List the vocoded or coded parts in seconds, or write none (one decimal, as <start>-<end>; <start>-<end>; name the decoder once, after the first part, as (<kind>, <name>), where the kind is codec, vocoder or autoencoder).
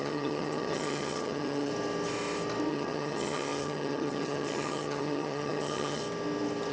0.0-1.7 (vocoder, HiFi-GAN); 2.7-6.0